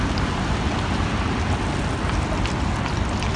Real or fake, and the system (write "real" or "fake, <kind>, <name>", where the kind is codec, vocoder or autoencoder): real